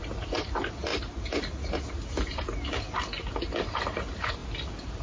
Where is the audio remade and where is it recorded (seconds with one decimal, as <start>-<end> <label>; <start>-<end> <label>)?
0.0-5.0 recorded